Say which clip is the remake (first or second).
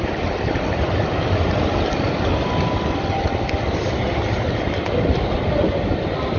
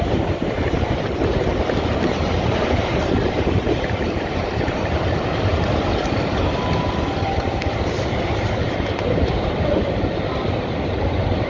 second